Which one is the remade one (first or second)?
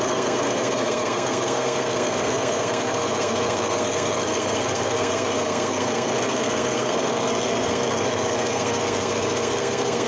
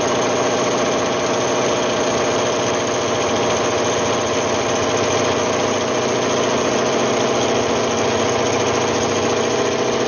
first